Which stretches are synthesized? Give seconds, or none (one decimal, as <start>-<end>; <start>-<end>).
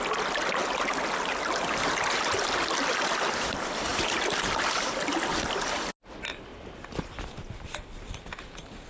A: 3.9-5.1; 6.5-7.8